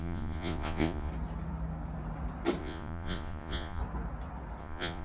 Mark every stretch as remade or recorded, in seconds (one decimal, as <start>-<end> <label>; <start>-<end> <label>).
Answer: 0.0-1.1 remade; 1.1-2.6 recorded; 2.6-3.8 remade; 3.8-4.6 recorded; 4.6-5.0 remade

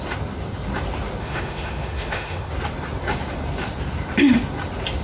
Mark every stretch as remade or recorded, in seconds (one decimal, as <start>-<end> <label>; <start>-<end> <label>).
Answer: 0.0-1.2 recorded; 1.2-2.5 remade; 2.5-5.0 recorded

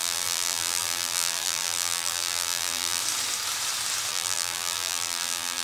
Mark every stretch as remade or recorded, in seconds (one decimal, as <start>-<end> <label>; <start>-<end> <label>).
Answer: 0.0-3.0 remade; 3.0-4.1 recorded; 4.1-5.6 remade

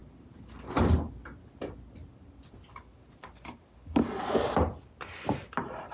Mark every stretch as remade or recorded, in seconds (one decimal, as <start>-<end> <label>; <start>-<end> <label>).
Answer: 0.0-5.9 recorded

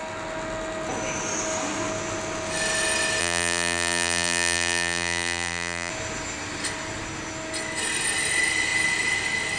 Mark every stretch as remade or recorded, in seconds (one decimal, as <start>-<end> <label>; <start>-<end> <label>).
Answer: 0.0-3.2 recorded; 3.2-5.9 remade; 5.9-9.6 recorded

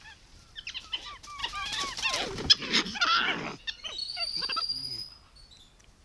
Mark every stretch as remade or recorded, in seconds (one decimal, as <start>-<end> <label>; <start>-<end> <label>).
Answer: 0.0-6.0 recorded

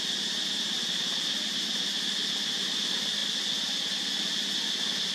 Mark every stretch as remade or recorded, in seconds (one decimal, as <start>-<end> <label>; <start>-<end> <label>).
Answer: 0.0-5.1 recorded

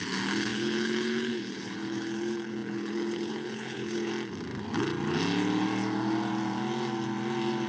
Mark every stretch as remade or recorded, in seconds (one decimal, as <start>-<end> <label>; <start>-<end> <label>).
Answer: 0.0-4.1 remade; 4.1-7.7 recorded